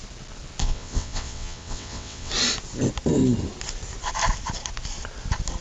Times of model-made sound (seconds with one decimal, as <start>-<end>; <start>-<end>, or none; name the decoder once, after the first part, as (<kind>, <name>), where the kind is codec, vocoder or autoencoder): 0.6-2.3 (vocoder, WaveNeXt)